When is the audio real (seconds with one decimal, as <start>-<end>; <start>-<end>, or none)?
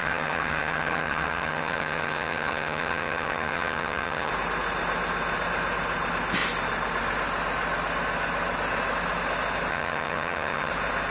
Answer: 4.3-9.7; 10.7-11.1